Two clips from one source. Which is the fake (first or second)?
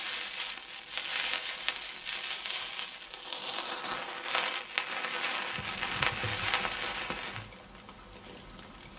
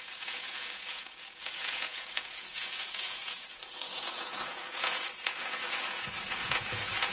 second